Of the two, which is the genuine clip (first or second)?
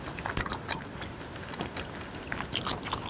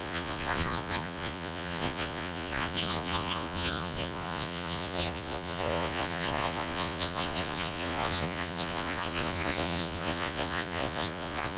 first